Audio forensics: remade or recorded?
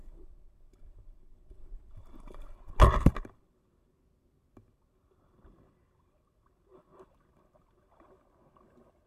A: recorded